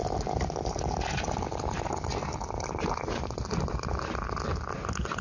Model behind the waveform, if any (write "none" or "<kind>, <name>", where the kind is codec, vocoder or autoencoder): none